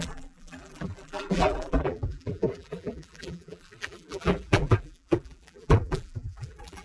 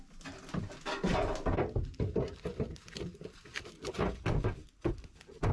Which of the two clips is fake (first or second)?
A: first